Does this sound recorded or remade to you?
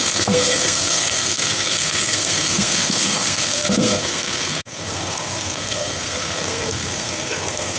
remade